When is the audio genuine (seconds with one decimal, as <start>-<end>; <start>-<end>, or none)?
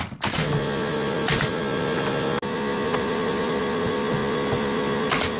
0.0-5.4